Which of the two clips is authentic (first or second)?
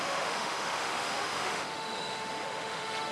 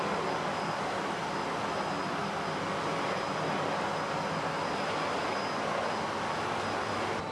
second